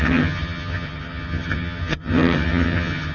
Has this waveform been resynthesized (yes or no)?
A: yes